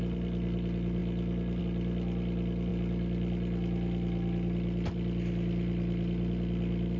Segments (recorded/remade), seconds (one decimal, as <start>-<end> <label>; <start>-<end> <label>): 0.0-7.0 recorded